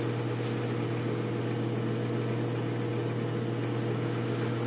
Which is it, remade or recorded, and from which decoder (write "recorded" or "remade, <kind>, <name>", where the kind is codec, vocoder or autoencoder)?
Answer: recorded